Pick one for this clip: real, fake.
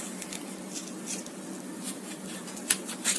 real